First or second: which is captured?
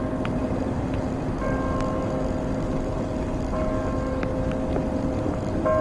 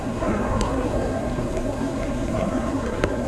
first